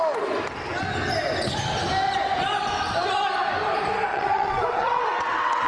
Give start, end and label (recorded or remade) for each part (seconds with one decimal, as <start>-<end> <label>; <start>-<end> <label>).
0.0-4.1 recorded; 4.1-5.7 remade